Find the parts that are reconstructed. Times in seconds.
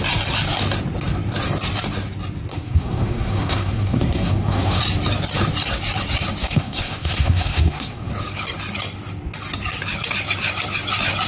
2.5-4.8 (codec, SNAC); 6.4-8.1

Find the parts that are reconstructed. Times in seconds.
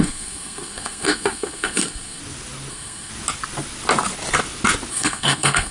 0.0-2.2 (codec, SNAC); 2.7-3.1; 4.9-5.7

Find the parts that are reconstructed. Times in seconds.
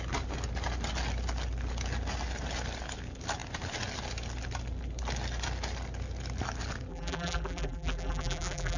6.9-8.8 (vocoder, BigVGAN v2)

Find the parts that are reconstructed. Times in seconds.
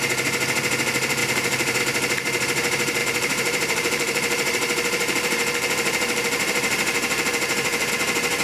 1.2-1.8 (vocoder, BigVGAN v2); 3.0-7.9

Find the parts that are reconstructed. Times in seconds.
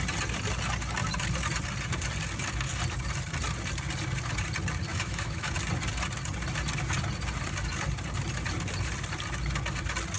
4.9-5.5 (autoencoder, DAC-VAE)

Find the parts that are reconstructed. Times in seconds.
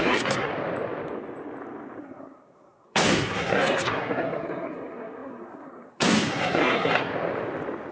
0.0-0.5 (codec, SNAC); 2.0-7.1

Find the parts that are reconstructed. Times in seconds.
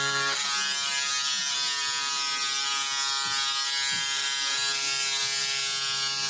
none